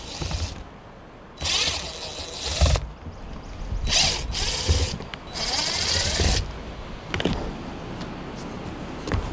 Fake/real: real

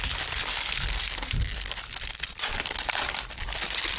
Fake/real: real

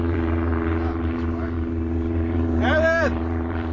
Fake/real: fake